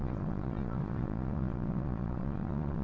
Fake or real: fake